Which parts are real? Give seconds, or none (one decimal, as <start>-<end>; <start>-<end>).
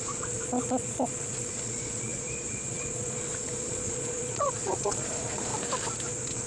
5.5-6.0